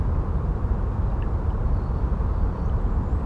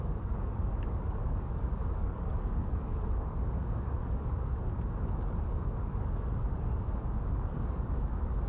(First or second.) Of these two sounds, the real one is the first